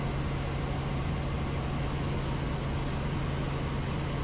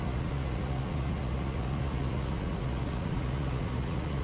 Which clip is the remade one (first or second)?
second